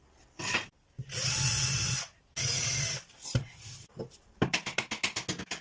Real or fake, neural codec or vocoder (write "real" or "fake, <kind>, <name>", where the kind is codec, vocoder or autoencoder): real